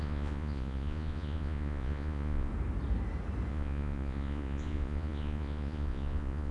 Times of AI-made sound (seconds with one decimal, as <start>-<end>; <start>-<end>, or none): 0.0-2.5; 3.5-6.5